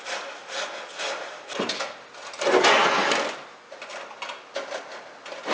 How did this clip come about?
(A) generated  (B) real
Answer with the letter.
B